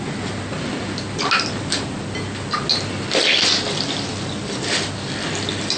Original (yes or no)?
yes